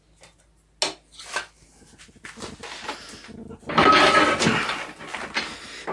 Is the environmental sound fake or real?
real